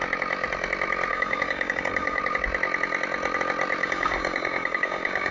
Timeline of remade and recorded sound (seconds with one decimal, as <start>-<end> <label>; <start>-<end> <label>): 0.0-1.1 recorded; 1.1-2.2 remade; 2.2-3.8 recorded; 3.8-5.3 remade